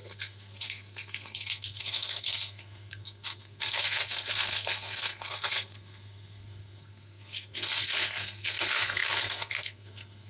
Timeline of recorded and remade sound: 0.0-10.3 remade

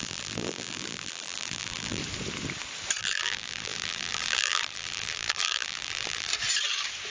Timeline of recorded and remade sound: 0.0-2.0 remade; 2.0-3.0 recorded; 3.0-6.3 remade; 6.3-7.1 recorded

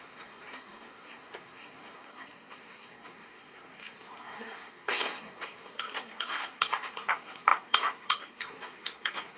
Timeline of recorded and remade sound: 0.0-9.4 remade

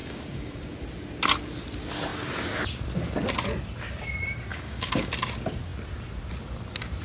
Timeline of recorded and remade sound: 0.0-0.6 remade; 0.6-4.5 recorded; 4.5-5.1 remade; 5.1-7.0 recorded

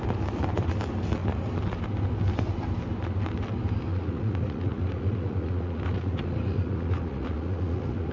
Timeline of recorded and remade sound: 0.0-3.9 recorded; 3.9-8.1 remade